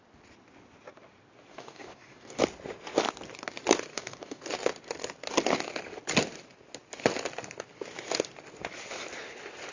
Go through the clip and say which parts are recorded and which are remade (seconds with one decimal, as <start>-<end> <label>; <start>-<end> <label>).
0.0-1.5 recorded; 1.5-2.4 remade; 2.4-3.9 recorded; 3.9-4.4 remade; 4.4-9.7 recorded